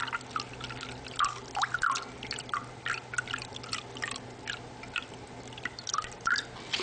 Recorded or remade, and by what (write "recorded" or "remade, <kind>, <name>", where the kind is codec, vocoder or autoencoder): recorded